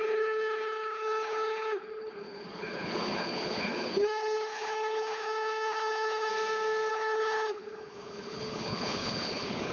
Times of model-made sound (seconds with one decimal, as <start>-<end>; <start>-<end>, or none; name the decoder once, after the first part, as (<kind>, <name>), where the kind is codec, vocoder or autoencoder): 0.0-6.3 (codec, HILCodec); 6.9-9.7